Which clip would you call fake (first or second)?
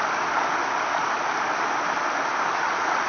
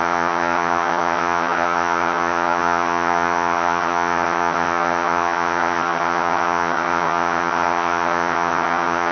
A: second